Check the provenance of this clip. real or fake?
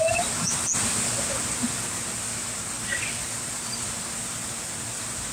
real